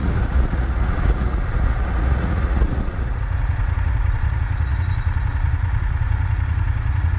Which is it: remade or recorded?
remade